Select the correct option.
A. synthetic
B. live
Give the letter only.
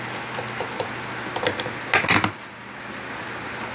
B